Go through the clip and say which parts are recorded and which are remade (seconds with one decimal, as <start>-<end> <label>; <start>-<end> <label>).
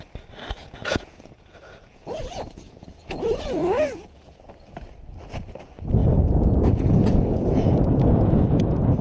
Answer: 0.0-0.6 recorded; 0.6-4.5 remade; 4.5-6.0 recorded; 6.0-9.0 remade